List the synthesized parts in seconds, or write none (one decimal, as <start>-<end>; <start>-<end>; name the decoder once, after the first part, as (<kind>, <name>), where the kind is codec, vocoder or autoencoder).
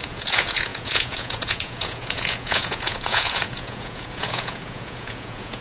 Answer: 0.0-5.6 (vocoder, Vocos)